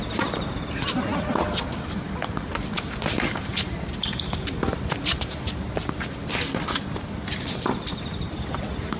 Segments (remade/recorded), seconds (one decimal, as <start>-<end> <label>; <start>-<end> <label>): 0.0-9.0 recorded